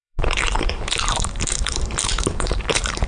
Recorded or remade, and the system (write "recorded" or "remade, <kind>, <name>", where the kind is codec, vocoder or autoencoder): remade, vocoder, BigVGAN v2